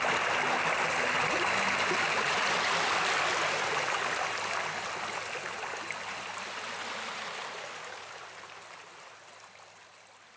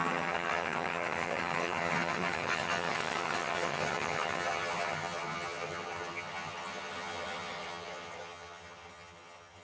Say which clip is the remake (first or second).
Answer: second